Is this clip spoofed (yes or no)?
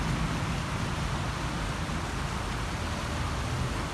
no